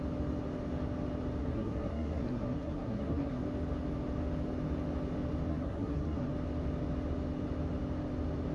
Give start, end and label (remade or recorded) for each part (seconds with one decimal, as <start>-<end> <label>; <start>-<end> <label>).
0.0-1.4 recorded; 1.4-3.4 remade; 3.4-5.5 recorded; 5.5-6.3 remade; 6.3-8.5 recorded